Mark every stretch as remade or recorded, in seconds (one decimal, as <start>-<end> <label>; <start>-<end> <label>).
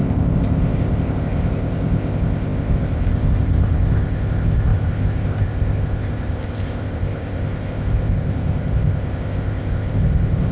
0.0-10.5 remade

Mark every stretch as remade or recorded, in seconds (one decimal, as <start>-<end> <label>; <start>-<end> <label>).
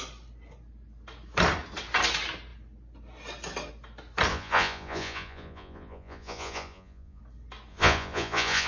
0.0-4.3 recorded; 4.3-7.2 remade; 7.2-7.7 recorded; 7.7-8.7 remade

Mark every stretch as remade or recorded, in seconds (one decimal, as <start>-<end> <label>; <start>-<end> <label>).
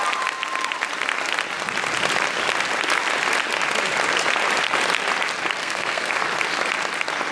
0.0-5.6 recorded; 5.6-6.1 remade; 6.1-7.3 recorded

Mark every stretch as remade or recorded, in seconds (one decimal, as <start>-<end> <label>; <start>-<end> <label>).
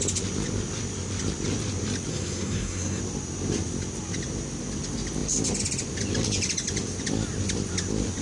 0.0-2.1 recorded; 2.1-3.0 remade; 3.0-8.2 recorded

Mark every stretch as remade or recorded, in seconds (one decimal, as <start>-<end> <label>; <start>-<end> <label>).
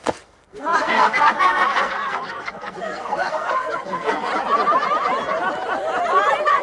0.0-4.3 remade; 4.3-6.6 recorded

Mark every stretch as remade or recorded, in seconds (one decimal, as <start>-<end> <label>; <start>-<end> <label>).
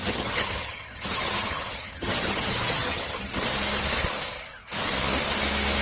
0.0-3.4 remade; 3.4-5.8 recorded